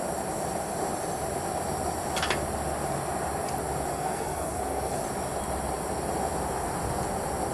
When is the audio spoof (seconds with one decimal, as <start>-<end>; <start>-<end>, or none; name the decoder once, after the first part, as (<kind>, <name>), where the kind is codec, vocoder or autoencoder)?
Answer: 3.9-5.0 (codec, SNAC)